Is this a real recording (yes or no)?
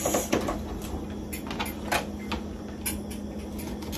yes